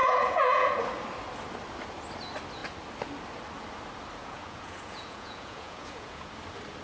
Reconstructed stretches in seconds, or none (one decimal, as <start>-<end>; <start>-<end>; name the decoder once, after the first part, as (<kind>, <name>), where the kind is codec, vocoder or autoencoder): 0.0-0.8 (vocoder, Vocos); 4.2-6.3